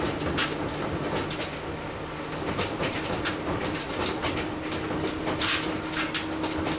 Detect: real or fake real